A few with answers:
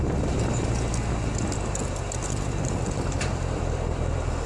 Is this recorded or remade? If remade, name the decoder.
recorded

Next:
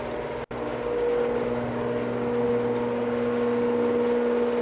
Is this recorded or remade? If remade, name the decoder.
recorded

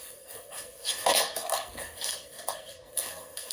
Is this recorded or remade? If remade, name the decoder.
remade, codec, SNAC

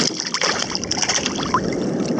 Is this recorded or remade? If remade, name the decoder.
recorded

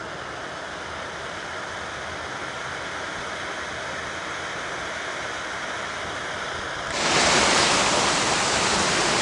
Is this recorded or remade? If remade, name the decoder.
recorded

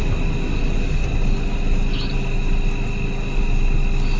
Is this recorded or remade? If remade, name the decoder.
recorded